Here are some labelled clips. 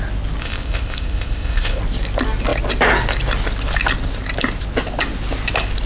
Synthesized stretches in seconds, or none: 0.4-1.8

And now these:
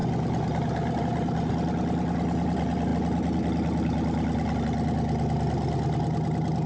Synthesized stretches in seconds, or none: none

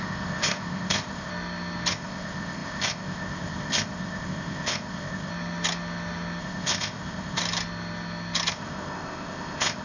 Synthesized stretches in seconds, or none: 0.0-1.3; 1.9-5.3; 6.4-7.4; 8.5-9.8

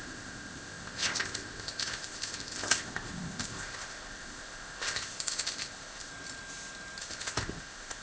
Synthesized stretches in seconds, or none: 0.0-6.1; 7.0-8.0